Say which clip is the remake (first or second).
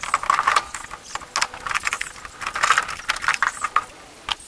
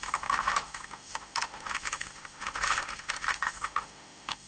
second